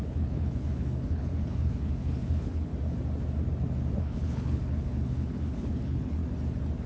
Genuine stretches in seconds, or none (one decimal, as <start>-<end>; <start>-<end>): 2.7-4.0; 6.2-6.9